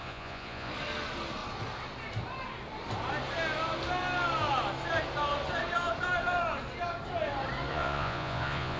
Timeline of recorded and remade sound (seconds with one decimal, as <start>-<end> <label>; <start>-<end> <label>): 0.0-0.7 remade; 0.7-7.7 recorded; 7.7-8.8 remade